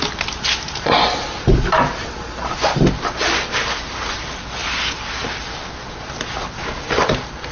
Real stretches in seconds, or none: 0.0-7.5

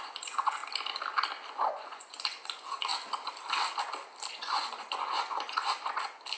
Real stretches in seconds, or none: 0.6-1.5; 2.9-4.3; 5.6-6.4